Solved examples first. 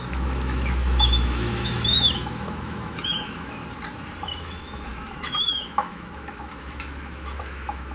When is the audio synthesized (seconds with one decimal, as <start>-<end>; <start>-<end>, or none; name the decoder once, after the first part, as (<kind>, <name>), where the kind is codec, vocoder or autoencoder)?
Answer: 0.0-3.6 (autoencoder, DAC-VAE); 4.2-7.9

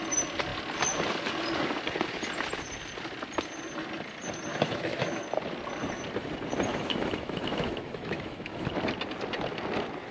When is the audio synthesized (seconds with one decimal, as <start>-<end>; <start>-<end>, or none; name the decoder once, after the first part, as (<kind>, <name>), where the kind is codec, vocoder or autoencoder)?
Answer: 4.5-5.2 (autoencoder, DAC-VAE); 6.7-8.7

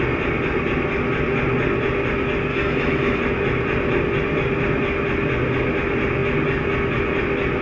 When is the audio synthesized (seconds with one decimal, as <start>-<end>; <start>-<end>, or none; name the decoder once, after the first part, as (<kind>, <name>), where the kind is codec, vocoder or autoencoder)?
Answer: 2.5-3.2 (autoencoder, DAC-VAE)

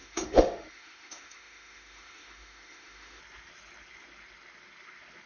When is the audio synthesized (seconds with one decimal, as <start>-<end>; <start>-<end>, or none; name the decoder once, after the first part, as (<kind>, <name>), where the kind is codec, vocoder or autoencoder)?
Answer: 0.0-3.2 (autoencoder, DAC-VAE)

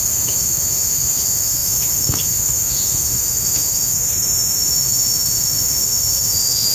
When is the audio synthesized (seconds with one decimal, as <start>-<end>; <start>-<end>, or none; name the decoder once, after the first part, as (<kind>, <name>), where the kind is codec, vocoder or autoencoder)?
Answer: 0.0-6.7 (autoencoder, DAC-VAE)